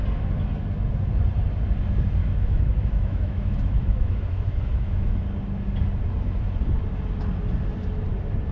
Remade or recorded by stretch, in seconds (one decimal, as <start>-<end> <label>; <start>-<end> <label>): 0.0-2.2 recorded; 2.2-5.2 remade; 5.2-8.5 recorded